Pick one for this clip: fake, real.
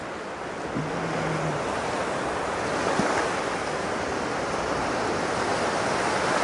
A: real